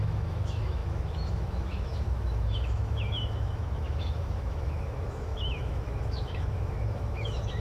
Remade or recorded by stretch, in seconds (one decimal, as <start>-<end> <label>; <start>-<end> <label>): 0.0-7.6 remade